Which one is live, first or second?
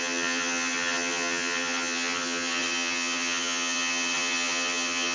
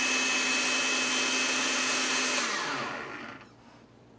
second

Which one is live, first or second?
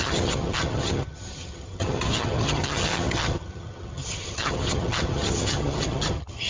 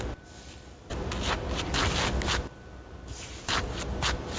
second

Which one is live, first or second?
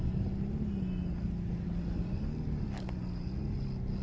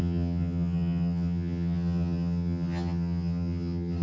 first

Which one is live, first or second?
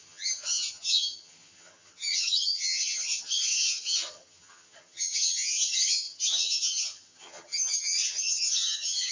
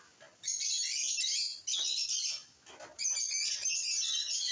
second